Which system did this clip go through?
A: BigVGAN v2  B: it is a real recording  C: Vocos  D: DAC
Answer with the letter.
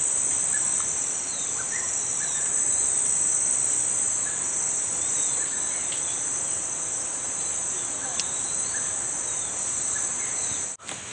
B